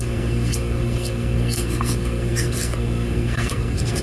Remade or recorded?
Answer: remade